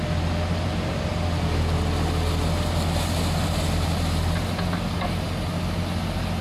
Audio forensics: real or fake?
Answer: real